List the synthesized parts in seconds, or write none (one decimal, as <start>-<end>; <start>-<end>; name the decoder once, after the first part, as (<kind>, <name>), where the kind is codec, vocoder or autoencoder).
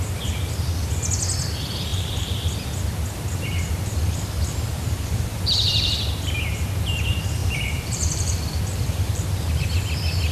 1.9-2.5 (vocoder, BigVGAN v2); 3.3-6.0; 7.4-9.5